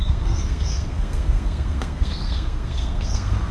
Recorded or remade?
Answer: remade